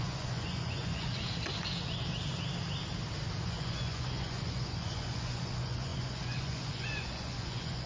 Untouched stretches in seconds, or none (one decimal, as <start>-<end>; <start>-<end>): 1.2-3.4

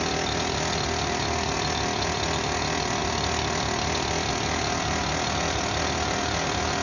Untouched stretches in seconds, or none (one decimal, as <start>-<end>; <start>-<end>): 0.0-6.8

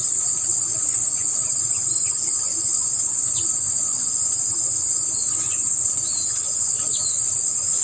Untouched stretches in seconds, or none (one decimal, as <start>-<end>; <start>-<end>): none

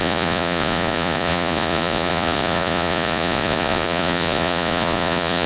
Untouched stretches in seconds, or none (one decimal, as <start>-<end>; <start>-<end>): none

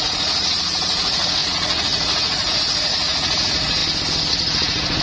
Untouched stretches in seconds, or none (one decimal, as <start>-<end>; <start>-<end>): 3.8-4.3